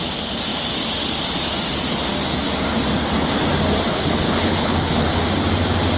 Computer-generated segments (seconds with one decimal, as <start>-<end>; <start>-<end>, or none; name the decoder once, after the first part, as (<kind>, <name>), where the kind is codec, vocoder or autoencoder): 3.9-5.2 (codec, HILCodec)